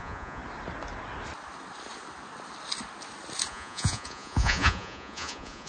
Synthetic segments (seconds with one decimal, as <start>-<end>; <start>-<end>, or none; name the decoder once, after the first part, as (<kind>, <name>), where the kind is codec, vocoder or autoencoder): 0.0-0.4 (vocoder, Vocos); 3.5-5.7